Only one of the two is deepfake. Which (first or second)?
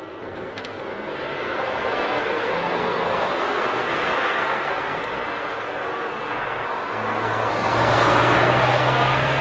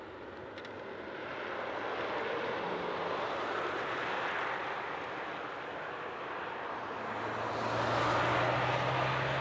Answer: first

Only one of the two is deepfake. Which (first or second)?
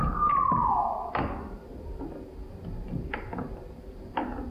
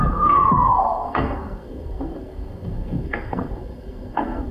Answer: second